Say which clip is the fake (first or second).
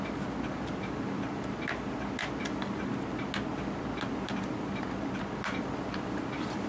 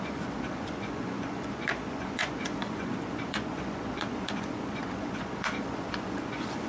second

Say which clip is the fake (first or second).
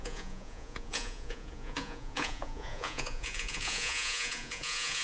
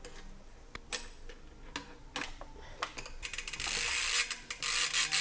first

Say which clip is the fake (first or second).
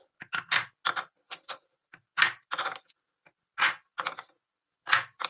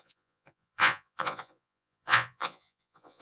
second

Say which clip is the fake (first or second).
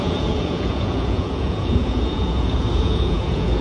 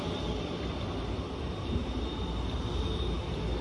first